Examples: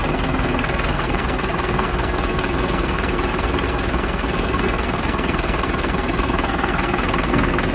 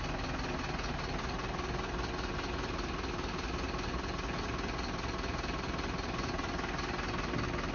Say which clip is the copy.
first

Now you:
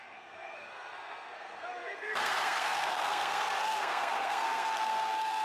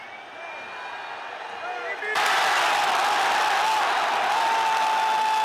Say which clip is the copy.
first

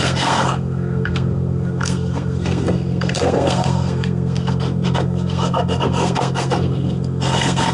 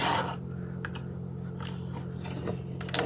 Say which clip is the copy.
first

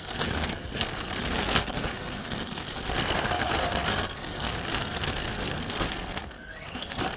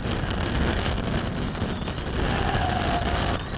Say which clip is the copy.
first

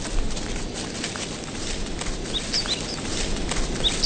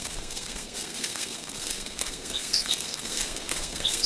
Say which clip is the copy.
second